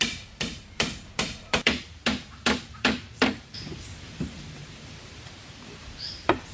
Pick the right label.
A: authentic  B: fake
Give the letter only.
B